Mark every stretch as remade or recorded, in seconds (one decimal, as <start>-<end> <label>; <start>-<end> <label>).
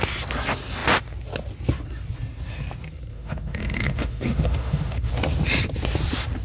0.0-3.1 recorded; 3.1-5.1 remade; 5.1-6.4 recorded